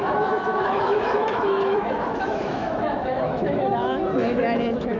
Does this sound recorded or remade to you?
remade